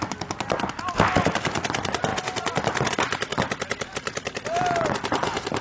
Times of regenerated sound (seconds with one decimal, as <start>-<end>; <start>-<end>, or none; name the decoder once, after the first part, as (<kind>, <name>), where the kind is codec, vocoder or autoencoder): none